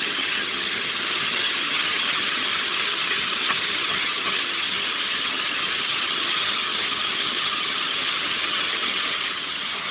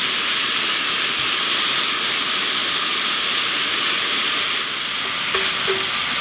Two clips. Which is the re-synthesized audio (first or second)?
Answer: first